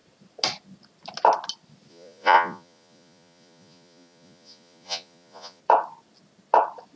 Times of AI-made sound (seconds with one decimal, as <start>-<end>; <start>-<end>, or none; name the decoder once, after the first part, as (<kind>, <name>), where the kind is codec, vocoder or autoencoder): 1.9-5.6 (vocoder, Vocos)